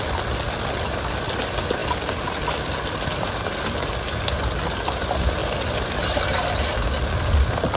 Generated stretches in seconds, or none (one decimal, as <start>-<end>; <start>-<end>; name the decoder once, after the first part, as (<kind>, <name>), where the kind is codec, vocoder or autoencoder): none